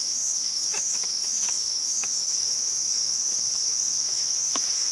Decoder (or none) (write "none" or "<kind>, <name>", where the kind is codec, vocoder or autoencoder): autoencoder, DAC-VAE